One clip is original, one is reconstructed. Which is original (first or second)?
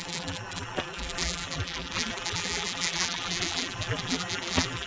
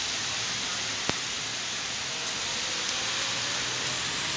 second